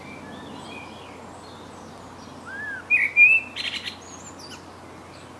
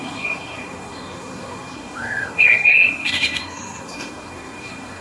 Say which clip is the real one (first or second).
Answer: first